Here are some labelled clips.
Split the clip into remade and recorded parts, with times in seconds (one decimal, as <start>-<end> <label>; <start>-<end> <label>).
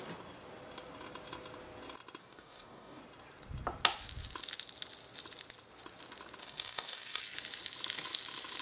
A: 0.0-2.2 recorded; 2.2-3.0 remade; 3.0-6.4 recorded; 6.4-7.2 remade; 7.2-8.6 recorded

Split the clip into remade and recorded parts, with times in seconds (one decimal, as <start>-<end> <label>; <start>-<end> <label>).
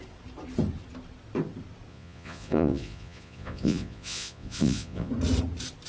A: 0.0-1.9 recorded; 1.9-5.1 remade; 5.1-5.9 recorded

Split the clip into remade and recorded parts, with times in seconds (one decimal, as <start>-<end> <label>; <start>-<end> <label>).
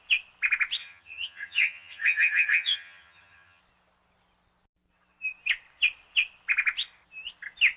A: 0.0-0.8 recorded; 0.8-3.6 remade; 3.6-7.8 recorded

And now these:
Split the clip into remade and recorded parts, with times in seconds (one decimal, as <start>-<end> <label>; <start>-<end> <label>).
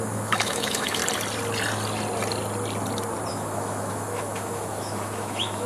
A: 0.0-1.0 remade; 1.0-3.3 recorded; 3.3-5.7 remade